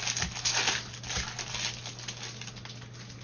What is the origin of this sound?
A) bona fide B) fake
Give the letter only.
A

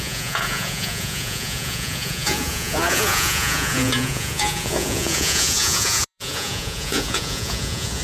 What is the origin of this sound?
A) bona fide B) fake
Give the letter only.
B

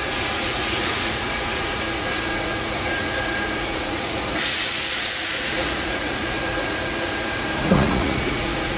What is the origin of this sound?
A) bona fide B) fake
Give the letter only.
B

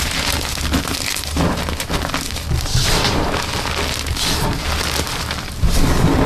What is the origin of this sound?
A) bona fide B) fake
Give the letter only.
A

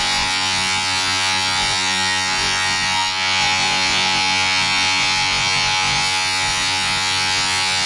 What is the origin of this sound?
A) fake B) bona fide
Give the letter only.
A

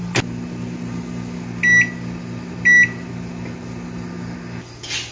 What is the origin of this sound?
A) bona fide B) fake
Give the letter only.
A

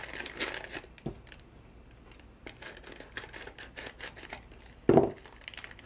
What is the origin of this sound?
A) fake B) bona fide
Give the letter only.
B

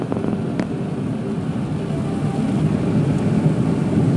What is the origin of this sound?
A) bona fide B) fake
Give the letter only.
A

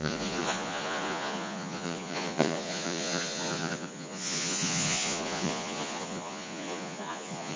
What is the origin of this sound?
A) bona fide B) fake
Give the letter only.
B